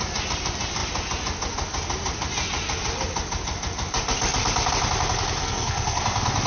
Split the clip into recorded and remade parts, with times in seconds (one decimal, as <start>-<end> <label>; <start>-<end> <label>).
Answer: 0.0-5.4 recorded; 5.4-6.0 remade; 6.0-6.5 recorded